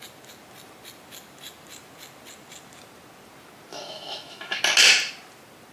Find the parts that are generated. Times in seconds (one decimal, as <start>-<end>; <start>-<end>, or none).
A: 3.7-4.6